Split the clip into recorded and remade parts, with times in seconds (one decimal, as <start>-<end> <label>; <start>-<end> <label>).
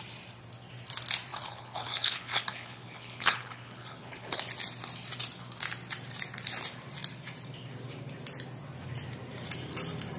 0.0-1.3 recorded; 1.3-4.4 remade; 4.4-10.2 recorded